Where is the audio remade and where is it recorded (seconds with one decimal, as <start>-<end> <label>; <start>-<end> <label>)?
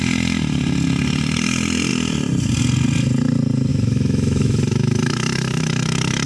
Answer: 0.0-3.7 recorded; 3.7-6.3 remade